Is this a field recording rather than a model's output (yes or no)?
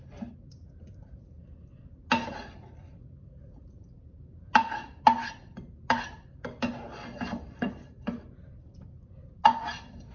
yes